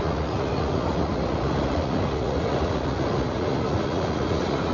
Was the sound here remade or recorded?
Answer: remade